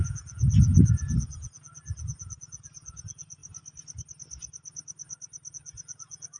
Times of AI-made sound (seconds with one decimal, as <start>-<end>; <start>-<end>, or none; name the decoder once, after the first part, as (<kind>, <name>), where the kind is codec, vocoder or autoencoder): 0.0-3.4 (vocoder, Vocos); 5.5-6.4